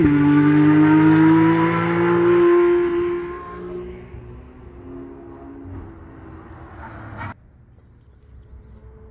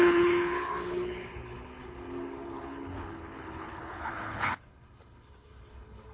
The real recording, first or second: first